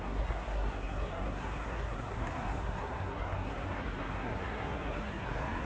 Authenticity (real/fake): fake